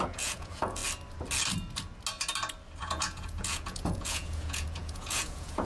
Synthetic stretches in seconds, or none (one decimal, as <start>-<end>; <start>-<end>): 0.0-0.8; 2.8-5.7